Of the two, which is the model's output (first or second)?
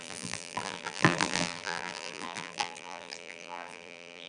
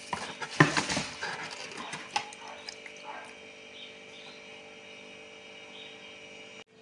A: first